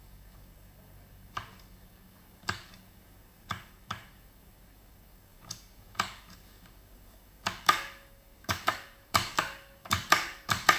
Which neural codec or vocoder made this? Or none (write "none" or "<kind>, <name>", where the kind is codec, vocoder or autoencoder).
codec, DAC